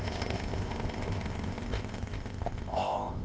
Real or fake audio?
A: fake